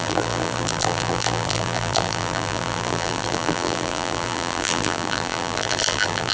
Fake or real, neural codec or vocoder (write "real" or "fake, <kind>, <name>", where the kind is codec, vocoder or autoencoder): fake, vocoder, BigVGAN v2